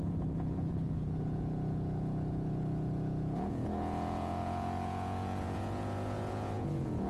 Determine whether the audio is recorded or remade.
remade